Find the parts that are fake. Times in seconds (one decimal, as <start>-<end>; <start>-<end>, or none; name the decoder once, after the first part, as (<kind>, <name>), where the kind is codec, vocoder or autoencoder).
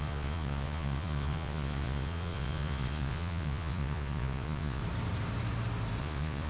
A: 0.0-4.8 (vocoder, Vocos); 6.0-6.5